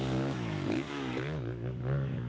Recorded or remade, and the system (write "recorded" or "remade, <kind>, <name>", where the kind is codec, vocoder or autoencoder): remade, codec, DAC